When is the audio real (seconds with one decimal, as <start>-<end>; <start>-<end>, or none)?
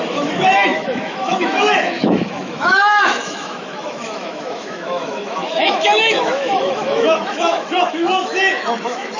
none